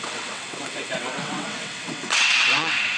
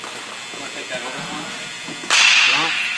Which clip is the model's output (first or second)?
first